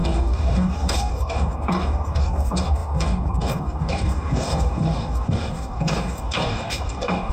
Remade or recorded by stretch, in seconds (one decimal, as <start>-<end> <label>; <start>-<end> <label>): 0.0-7.3 remade